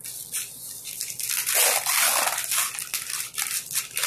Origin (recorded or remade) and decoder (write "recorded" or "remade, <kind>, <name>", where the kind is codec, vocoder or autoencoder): recorded